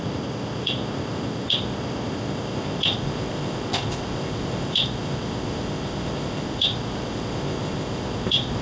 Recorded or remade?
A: remade